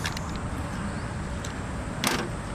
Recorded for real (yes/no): yes